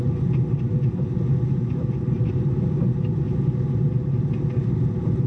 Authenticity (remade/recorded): recorded